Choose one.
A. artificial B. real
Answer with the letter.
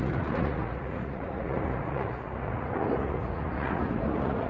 A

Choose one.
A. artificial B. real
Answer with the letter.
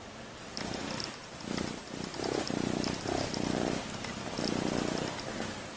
B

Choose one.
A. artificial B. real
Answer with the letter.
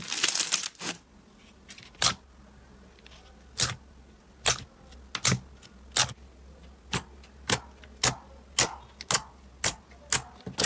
B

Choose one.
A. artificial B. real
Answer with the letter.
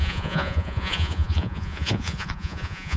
A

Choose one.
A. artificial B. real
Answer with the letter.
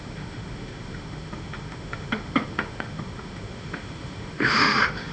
A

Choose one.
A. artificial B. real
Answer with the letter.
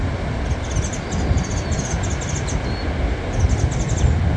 B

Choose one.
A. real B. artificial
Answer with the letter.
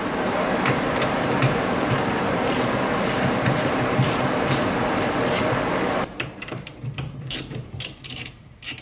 B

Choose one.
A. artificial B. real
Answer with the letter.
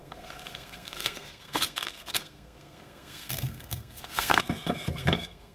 A